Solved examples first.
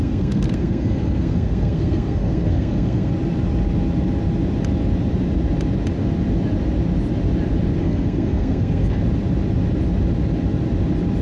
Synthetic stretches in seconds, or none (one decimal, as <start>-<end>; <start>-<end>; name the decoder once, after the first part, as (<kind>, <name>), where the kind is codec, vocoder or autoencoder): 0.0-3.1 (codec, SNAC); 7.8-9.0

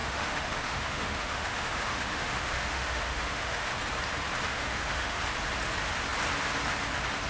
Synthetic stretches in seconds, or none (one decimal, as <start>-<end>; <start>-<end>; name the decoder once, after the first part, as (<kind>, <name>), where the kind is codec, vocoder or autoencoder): 0.0-3.7 (autoencoder, DAC-VAE); 4.5-5.2

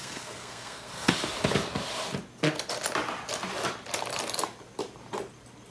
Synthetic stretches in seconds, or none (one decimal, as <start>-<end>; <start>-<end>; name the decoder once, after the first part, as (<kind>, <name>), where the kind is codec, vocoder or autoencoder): 0.0-1.1 (codec, SNAC)